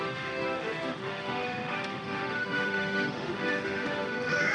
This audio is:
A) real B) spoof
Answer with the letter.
B